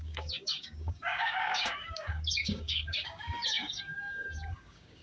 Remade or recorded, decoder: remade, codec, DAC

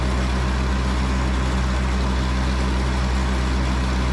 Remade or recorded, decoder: recorded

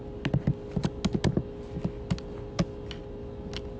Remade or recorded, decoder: recorded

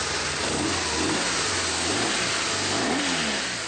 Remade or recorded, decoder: recorded